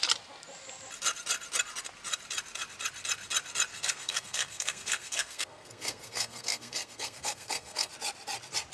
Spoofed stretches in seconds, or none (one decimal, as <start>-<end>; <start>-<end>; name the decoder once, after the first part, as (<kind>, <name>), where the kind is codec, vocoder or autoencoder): 3.7-7.9 (codec, SNAC)